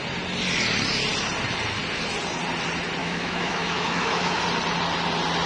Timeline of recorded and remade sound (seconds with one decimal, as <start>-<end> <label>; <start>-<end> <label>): 0.0-3.0 recorded; 3.0-4.4 remade; 4.4-5.5 recorded